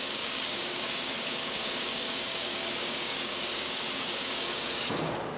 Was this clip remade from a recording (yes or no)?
yes